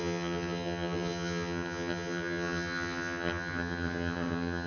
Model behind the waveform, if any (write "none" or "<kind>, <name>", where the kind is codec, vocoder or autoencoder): vocoder, HiFi-GAN